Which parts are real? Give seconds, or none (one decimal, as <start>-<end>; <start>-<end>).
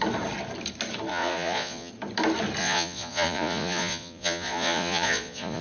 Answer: 0.0-1.1; 1.9-2.6